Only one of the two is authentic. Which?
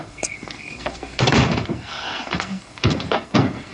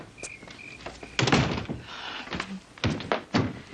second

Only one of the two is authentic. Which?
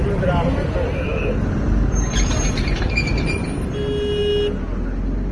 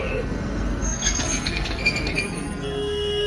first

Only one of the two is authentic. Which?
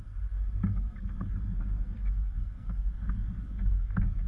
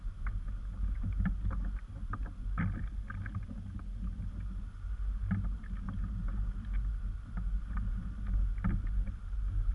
second